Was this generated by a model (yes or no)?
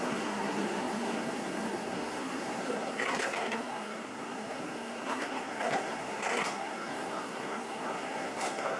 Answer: yes